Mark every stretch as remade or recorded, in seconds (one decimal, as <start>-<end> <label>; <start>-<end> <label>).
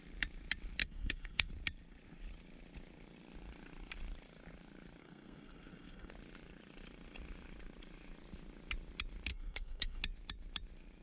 0.0-0.8 recorded; 0.8-1.5 remade; 1.5-5.0 recorded; 5.0-6.1 remade; 6.1-9.3 recorded; 9.3-10.0 remade; 10.0-11.0 recorded